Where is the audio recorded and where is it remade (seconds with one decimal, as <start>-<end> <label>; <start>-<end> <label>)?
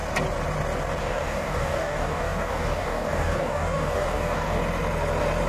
0.0-1.0 recorded; 1.0-4.6 remade; 4.6-5.5 recorded